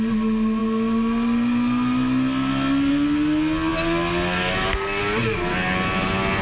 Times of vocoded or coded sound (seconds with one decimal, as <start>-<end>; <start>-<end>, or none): none